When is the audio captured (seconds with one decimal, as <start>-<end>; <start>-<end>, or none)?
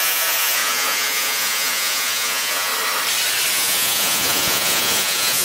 2.7-3.5